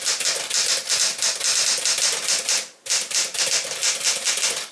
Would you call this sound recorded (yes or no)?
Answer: yes